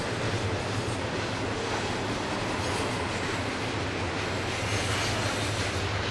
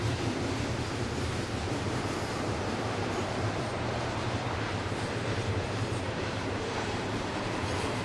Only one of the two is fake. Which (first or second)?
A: second